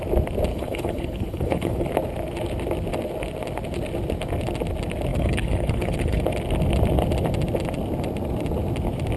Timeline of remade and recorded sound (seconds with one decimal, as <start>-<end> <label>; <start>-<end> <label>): 0.0-0.5 recorded; 0.5-1.9 remade; 1.9-5.1 recorded; 5.1-6.2 remade; 6.2-9.2 recorded